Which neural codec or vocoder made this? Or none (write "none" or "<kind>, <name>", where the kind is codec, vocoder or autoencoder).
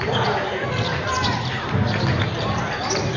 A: none